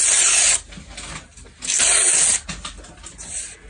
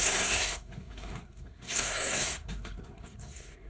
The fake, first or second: second